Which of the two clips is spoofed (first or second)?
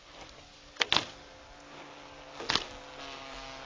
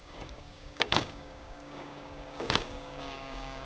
second